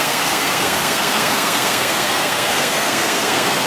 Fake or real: fake